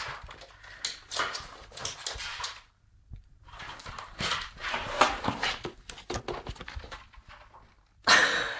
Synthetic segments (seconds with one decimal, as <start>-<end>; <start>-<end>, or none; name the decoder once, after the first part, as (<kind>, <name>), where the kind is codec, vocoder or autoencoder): 1.8-5.7 (vocoder, BigVGAN v2)